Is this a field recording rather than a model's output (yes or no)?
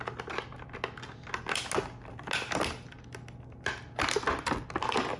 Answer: yes